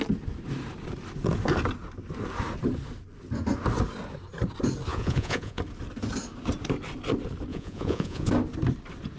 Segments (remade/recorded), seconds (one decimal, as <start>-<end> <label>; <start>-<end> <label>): 0.0-4.9 recorded; 4.9-5.6 remade; 5.6-7.5 recorded; 7.5-8.3 remade; 8.3-9.2 recorded